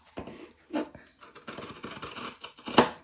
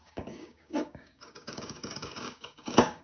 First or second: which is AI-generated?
second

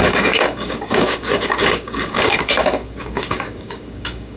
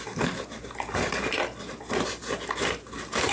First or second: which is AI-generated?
first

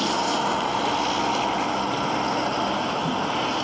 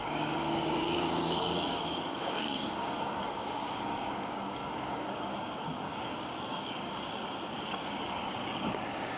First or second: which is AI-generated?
second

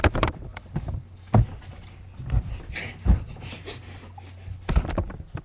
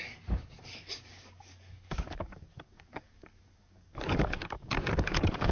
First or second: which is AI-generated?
second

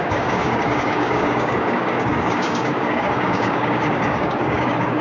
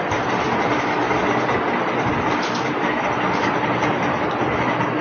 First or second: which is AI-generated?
first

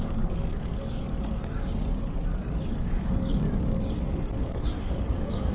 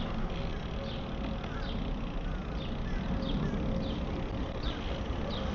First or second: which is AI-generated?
first